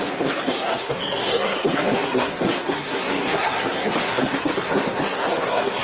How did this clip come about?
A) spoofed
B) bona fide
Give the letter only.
A